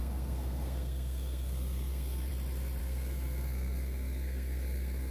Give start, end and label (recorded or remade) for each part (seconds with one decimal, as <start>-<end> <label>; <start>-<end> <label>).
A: 0.0-2.3 remade; 2.3-2.8 recorded; 2.8-5.1 remade